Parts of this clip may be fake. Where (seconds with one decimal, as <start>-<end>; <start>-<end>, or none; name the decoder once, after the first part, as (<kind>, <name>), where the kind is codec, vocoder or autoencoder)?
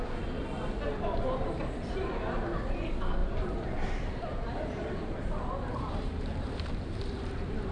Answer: 3.2-7.7 (vocoder, BigVGAN v2)